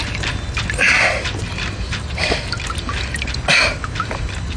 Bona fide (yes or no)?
yes